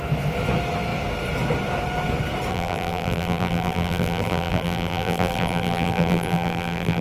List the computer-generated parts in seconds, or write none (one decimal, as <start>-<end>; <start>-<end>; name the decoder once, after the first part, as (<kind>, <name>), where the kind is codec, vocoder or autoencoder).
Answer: 2.5-7.0 (vocoder, BigVGAN v2)